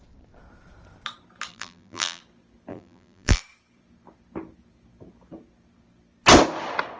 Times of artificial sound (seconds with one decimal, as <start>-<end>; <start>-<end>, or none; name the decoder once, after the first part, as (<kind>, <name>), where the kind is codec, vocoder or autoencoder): 1.5-2.2 (vocoder, BigVGAN v2); 2.7-3.4